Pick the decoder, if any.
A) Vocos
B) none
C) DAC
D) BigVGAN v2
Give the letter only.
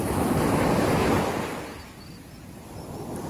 B